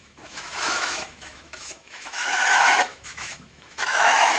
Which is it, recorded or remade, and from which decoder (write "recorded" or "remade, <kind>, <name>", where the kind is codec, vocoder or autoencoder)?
remade, autoencoder, DAC-VAE